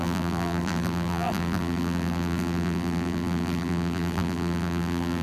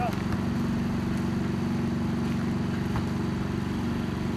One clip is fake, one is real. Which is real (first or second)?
second